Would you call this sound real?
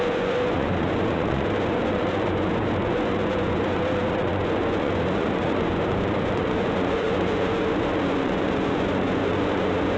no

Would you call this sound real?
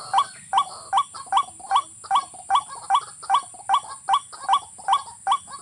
yes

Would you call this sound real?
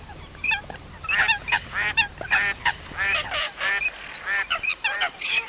yes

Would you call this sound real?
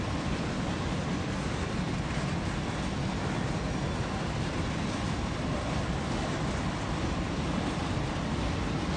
yes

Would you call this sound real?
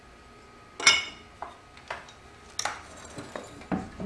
yes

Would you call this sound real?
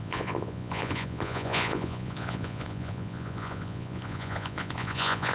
no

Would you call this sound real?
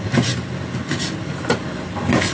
yes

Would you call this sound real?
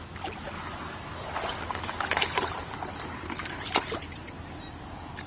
yes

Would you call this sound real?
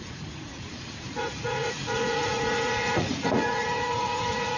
no